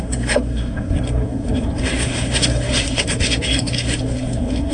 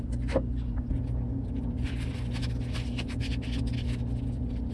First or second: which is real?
second